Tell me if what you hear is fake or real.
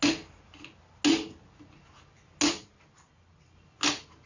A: real